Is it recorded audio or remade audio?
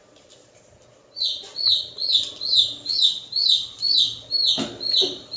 recorded